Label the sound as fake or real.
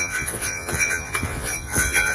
fake